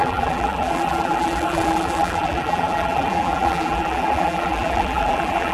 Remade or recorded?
remade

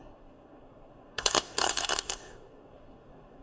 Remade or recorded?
remade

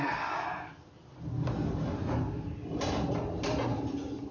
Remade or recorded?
recorded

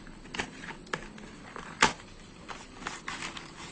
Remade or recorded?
recorded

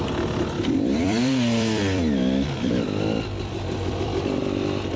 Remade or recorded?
remade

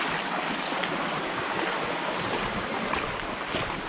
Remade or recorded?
recorded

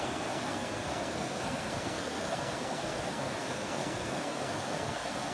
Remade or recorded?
remade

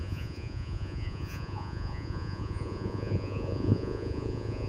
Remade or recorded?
remade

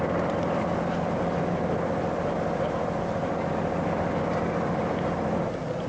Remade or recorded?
recorded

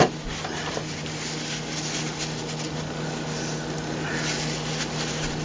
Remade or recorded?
recorded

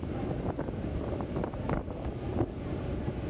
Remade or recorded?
recorded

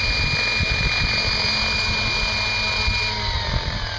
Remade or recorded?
recorded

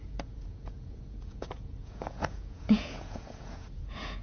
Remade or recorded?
remade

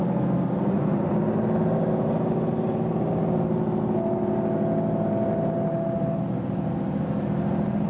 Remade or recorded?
recorded